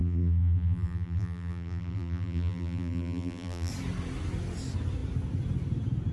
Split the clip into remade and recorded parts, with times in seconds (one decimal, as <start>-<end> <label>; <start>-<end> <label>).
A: 0.0-3.7 remade; 3.7-6.1 recorded